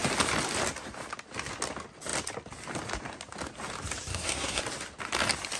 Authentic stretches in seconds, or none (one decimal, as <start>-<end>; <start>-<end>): 0.0-4.1; 4.6-5.6